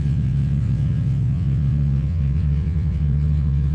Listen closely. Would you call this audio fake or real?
fake